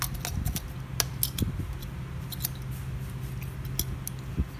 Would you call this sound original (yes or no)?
yes